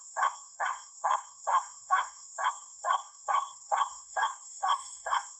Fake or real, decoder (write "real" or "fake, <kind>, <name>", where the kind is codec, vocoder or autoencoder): fake, codec, SNAC